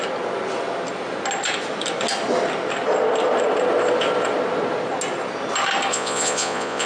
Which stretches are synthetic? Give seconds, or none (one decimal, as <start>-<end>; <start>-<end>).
5.9-6.9